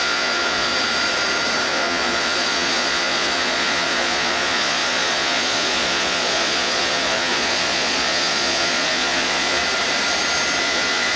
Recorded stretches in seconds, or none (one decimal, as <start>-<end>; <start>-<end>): 0.7-1.7; 9.6-10.6

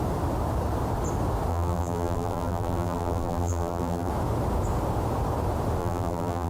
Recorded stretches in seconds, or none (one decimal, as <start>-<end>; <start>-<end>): 0.0-1.5; 4.1-5.8

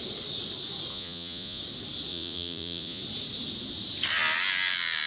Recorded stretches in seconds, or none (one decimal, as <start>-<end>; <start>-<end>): 0.0-0.9; 1.6-2.1; 3.0-5.1

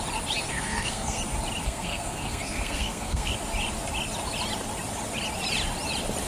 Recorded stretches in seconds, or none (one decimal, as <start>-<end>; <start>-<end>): 0.0-0.5; 1.2-1.6; 3.3-6.3

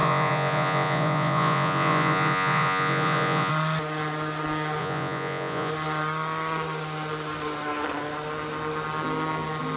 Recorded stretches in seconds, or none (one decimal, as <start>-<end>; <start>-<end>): 3.5-4.8; 5.7-9.8

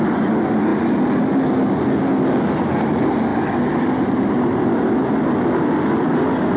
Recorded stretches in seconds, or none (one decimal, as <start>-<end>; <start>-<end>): 0.0-6.6

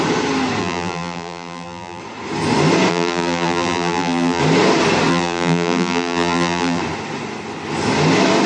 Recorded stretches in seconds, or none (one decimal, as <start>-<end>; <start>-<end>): 0.0-0.6; 2.0-2.9; 4.4-5.1; 6.8-8.5